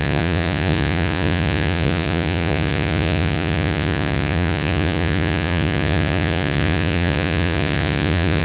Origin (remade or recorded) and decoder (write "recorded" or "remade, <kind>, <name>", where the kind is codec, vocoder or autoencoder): remade, vocoder, Vocos